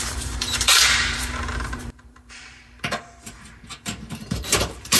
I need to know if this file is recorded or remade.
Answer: remade